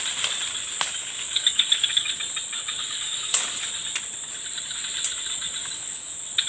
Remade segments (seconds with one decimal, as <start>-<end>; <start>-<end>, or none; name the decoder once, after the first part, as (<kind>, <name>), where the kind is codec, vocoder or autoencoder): 1.0-2.1 (codec, DAC); 2.8-3.6; 5.6-6.1